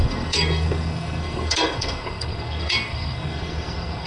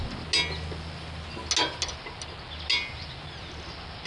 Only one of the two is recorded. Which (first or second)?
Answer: second